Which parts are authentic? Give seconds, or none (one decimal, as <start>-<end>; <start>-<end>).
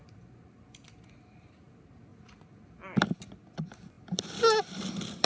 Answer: 0.0-5.2